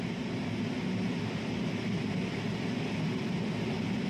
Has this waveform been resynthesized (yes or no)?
no